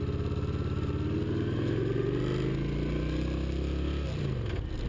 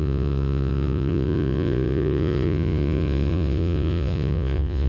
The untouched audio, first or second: first